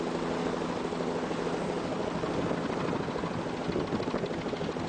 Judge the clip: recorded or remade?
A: recorded